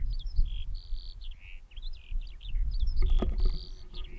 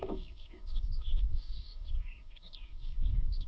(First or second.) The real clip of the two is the first